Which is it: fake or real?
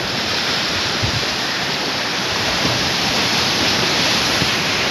fake